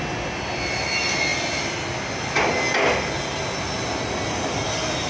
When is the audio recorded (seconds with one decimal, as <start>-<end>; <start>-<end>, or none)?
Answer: 0.0-5.1